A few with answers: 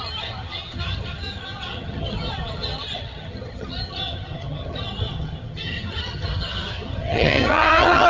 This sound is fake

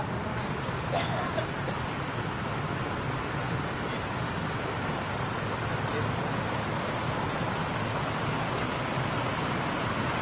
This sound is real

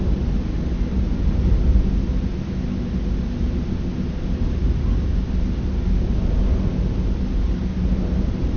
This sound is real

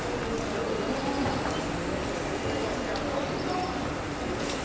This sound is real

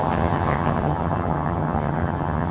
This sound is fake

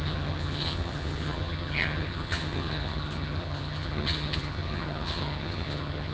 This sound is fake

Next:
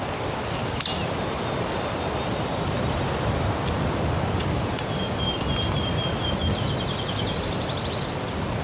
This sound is real